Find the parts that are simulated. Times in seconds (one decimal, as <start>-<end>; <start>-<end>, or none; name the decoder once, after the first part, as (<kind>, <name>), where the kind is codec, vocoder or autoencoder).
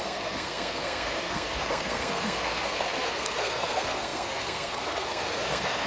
0.0-5.9 (codec, SNAC)